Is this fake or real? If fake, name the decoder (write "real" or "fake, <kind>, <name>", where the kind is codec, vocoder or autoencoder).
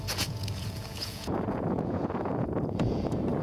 fake, vocoder, Vocos